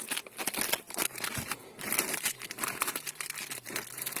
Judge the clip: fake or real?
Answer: real